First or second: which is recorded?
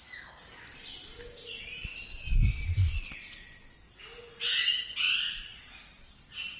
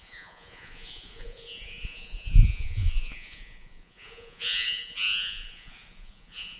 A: first